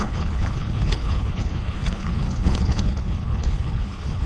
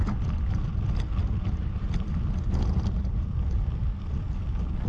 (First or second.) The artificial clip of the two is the first